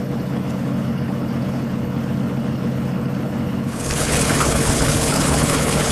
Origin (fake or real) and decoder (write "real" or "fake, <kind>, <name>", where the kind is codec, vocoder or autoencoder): fake, codec, HILCodec